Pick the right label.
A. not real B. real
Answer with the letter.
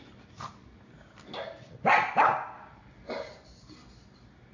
B